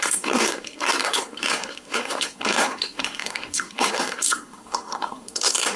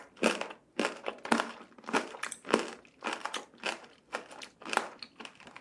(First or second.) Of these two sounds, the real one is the second